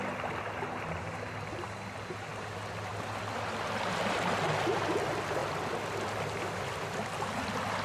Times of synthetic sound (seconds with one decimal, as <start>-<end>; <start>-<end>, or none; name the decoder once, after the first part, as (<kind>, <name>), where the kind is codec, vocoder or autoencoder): 5.4-6.6 (vocoder, BigVGAN v2)